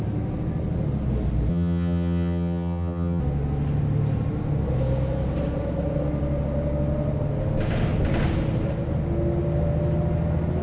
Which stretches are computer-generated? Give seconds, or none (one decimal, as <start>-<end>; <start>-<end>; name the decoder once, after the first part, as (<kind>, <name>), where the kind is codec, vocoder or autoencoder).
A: 1.5-3.2 (vocoder, HiFi-GAN)